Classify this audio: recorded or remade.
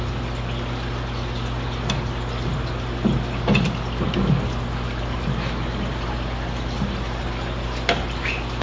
recorded